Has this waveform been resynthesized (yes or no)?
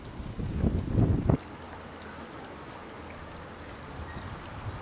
no